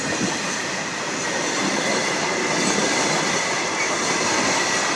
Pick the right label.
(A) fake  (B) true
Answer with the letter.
B